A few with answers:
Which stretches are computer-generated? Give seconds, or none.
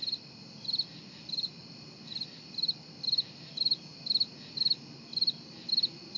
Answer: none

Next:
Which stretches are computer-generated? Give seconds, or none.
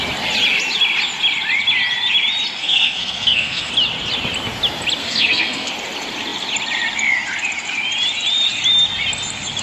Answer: 2.6-3.7 (codec, SNAC); 5.0-5.7